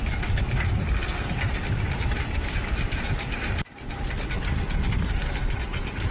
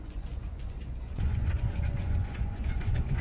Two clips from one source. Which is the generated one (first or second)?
second